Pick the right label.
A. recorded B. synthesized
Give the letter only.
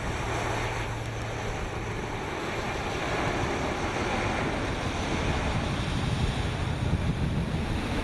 A